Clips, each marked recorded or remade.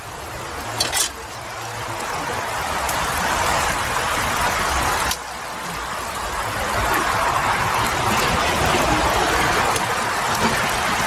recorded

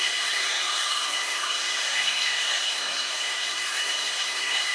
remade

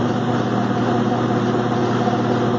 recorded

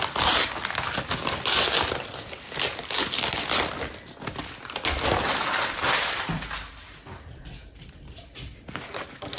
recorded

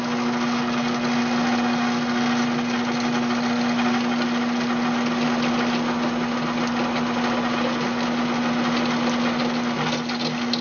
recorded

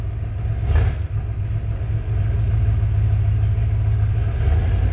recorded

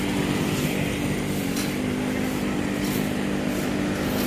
recorded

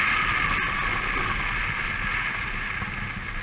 recorded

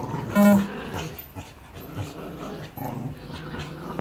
recorded